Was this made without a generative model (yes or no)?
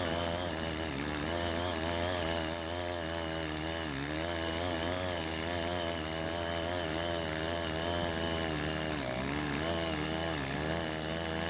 yes